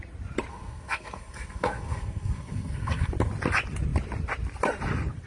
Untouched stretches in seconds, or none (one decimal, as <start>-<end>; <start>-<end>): 0.0-0.5; 3.1-5.3

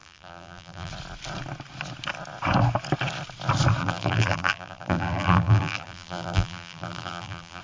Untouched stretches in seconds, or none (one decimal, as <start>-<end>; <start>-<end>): 0.9-3.8

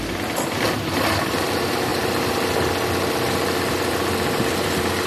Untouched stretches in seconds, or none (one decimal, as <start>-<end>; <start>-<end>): 0.0-5.1

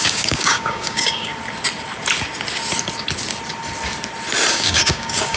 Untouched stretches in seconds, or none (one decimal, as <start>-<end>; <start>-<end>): 1.3-4.5

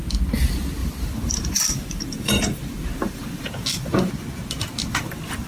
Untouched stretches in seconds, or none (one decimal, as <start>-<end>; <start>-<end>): 0.0-0.8; 4.1-4.9

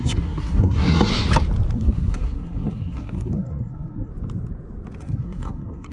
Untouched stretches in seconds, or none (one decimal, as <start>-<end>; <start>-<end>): 1.1-1.7; 4.1-5.0

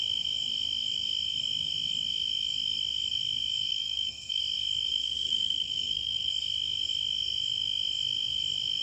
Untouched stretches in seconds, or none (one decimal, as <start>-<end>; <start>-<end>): 0.0-3.7; 4.4-4.9; 6.3-8.8

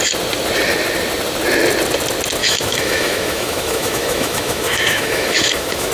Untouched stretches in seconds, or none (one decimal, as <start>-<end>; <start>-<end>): 0.0-2.4